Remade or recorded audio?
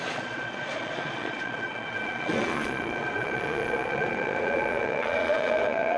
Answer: remade